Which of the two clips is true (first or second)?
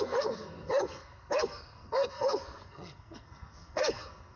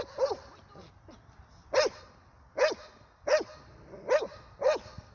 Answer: second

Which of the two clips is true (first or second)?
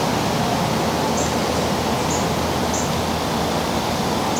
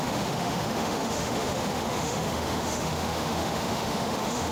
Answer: first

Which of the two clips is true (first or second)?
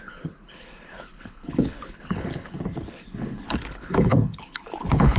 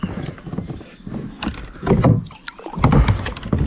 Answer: second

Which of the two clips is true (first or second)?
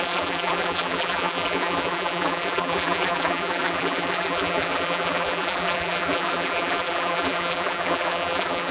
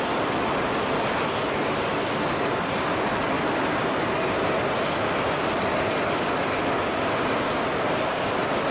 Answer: second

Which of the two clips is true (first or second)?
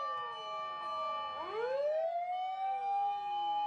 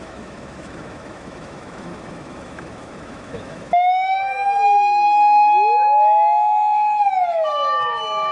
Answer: first